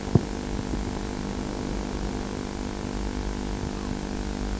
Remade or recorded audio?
recorded